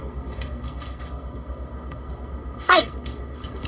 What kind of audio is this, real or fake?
fake